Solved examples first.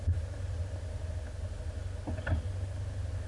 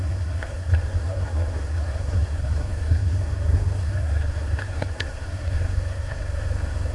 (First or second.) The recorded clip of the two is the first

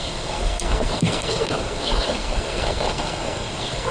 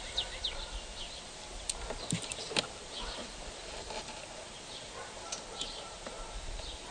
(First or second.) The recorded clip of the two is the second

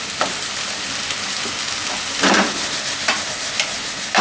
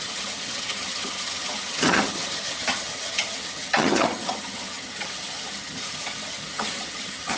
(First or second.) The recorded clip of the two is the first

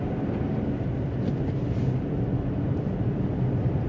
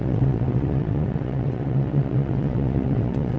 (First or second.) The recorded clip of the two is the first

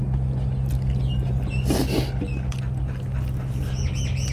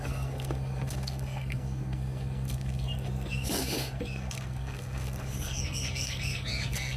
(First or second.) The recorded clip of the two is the first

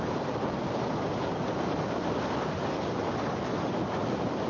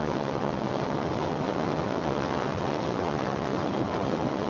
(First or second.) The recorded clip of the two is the first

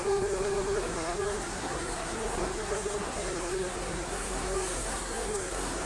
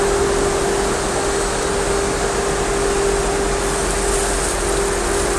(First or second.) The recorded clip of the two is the second